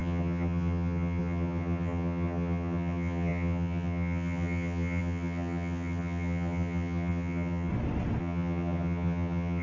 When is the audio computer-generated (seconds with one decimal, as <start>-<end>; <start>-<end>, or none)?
0.0-7.7; 8.2-9.6